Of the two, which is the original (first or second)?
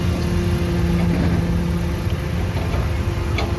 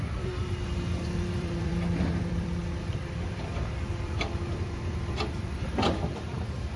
first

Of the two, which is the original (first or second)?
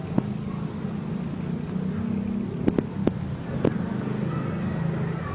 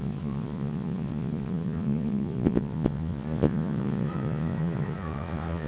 first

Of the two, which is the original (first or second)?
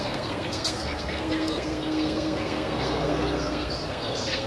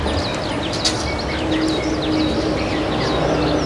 second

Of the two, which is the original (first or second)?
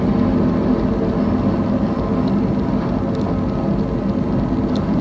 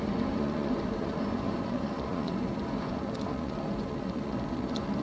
first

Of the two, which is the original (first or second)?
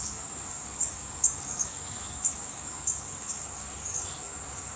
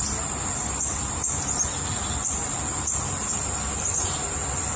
second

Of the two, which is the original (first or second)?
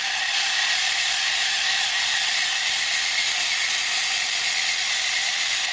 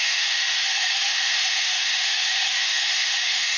first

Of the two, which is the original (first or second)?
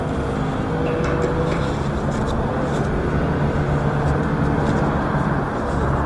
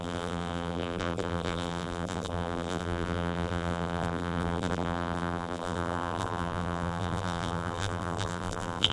first